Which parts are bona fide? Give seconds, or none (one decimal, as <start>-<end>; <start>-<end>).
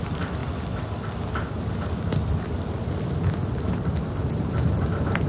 0.0-5.3